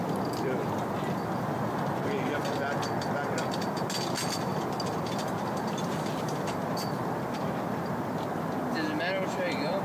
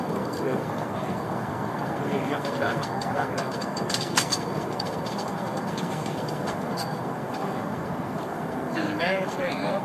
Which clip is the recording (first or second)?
first